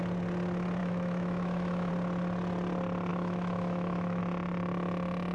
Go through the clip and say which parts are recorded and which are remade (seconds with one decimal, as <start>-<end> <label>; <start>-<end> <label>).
0.0-0.8 recorded; 0.8-1.9 remade; 1.9-3.1 recorded; 3.1-4.2 remade; 4.2-5.3 recorded